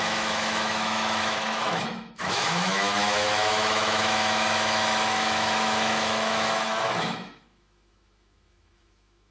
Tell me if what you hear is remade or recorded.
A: remade